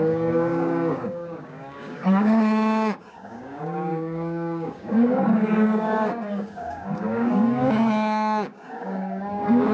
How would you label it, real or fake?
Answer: fake